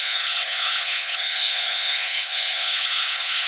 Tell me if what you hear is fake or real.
fake